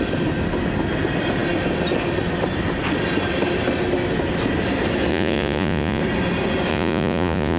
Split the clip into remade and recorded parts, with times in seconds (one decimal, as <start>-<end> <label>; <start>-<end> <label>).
0.0-5.1 recorded; 5.1-6.0 remade; 6.0-6.7 recorded; 6.7-7.6 remade